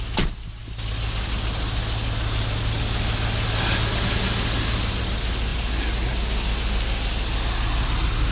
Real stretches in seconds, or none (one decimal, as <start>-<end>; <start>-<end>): 0.0-8.3